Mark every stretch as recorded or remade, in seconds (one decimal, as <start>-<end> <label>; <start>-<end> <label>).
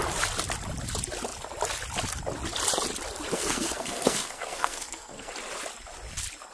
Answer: 0.0-3.3 recorded; 3.3-5.3 remade; 5.3-6.5 recorded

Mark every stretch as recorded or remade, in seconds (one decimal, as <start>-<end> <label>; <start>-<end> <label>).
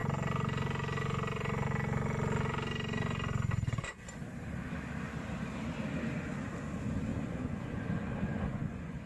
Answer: 0.0-7.1 recorded; 7.1-9.1 remade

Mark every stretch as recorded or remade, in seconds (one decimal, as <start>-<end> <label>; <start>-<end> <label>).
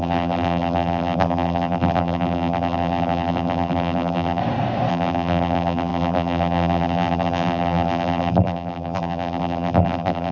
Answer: 0.0-4.4 remade; 4.4-4.9 recorded; 4.9-10.3 remade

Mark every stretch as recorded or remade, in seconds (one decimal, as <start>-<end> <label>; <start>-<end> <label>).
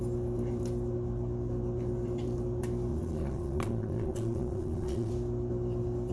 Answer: 0.0-2.9 recorded; 2.9-5.1 remade; 5.1-6.1 recorded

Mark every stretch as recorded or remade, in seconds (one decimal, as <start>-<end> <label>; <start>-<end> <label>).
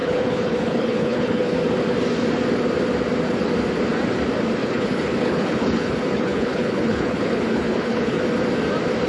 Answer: 0.0-1.6 remade; 1.6-4.6 recorded; 4.6-8.2 remade; 8.2-9.1 recorded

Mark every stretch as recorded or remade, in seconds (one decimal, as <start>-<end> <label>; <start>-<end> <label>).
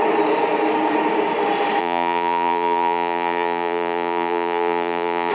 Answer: 0.0-1.8 recorded; 1.8-5.3 remade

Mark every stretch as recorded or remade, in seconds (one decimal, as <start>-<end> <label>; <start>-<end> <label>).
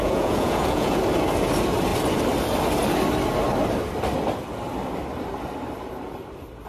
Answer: 0.0-1.0 remade; 1.0-6.7 recorded